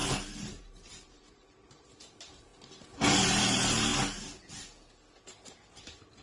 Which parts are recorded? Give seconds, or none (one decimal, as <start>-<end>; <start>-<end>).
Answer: 2.5-3.2; 3.9-5.3